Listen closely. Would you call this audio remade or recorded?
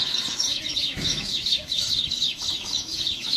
remade